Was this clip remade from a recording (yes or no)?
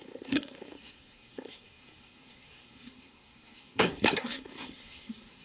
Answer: yes